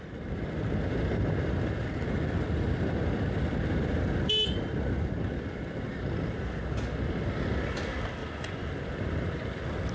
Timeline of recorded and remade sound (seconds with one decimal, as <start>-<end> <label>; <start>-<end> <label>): 0.0-8.2 recorded; 8.2-8.7 remade; 8.7-9.9 recorded